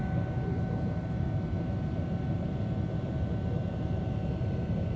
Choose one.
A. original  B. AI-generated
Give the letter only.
A